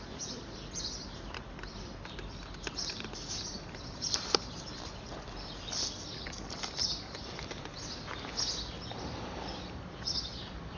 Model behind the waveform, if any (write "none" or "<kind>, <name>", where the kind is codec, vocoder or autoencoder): none